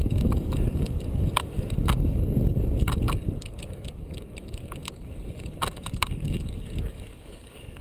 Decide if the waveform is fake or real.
fake